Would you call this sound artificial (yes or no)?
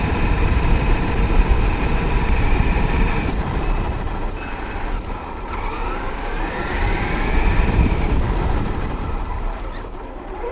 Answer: yes